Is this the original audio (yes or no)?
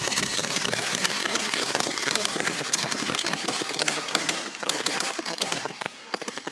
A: no